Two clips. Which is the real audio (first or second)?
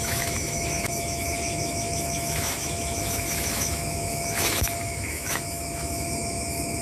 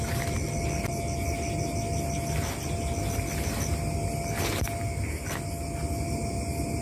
second